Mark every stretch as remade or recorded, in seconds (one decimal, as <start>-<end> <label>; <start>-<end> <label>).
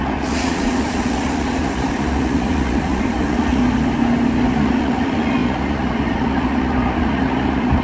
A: 0.0-3.6 remade; 3.6-4.5 recorded; 4.5-7.8 remade